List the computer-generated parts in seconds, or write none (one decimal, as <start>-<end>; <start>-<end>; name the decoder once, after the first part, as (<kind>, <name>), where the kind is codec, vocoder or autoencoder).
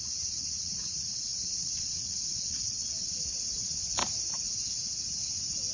0.0-4.0 (vocoder, Vocos)